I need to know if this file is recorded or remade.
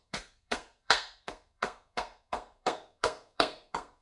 remade